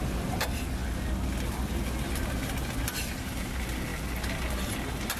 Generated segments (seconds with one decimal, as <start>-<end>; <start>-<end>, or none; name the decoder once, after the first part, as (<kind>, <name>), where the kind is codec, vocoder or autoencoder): none